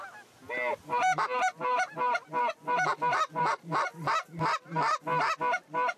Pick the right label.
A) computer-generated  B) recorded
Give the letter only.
B